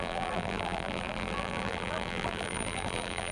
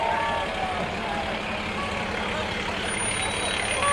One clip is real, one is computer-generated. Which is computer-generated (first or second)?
first